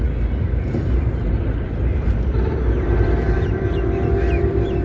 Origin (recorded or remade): remade